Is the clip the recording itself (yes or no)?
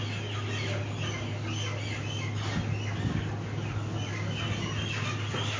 yes